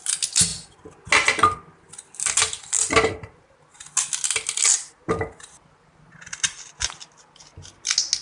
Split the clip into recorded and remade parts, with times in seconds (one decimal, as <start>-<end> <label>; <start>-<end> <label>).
0.0-8.2 recorded